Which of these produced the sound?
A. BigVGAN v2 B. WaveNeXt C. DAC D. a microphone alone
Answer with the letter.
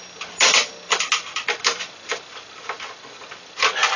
D